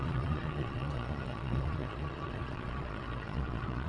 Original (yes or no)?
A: no